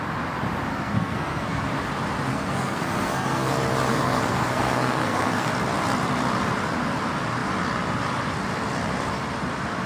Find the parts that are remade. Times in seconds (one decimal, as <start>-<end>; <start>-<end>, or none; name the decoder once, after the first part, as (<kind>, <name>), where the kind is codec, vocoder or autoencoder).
0.7-1.6 (codec, SNAC); 2.3-3.5; 3.9-5.5